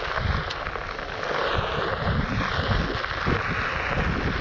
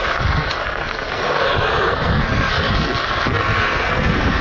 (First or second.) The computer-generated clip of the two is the second